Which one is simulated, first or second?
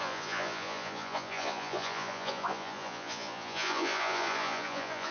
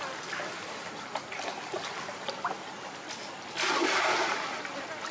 first